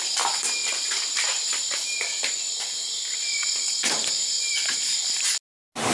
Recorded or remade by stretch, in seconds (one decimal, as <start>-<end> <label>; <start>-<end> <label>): 0.0-0.6 recorded; 0.6-2.2 remade; 2.2-5.9 recorded